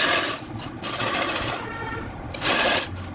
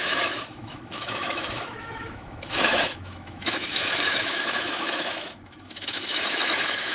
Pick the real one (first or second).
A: first